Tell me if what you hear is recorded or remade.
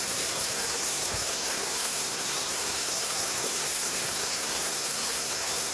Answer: remade